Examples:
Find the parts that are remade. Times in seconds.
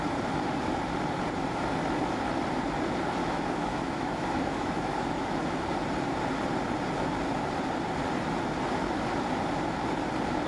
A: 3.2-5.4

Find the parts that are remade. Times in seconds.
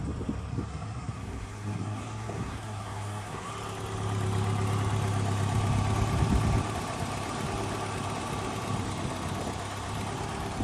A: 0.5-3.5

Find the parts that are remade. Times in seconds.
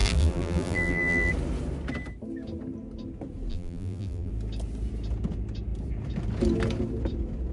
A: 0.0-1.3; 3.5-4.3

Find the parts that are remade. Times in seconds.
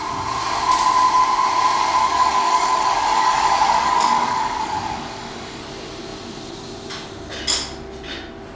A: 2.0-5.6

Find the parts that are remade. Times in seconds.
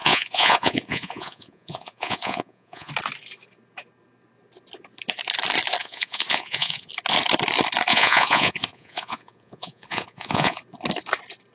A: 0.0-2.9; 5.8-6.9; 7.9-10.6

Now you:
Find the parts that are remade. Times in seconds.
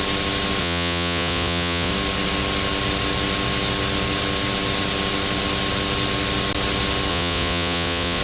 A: 0.6-1.9; 7.1-8.2